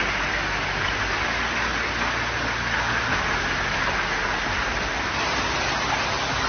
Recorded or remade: recorded